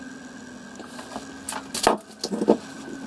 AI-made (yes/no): no